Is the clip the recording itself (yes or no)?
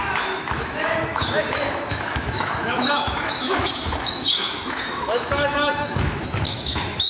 no